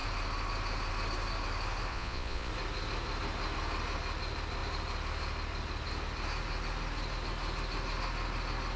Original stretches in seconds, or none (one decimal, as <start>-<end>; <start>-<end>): 0.0-1.9; 2.5-8.8